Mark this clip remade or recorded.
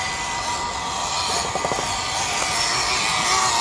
recorded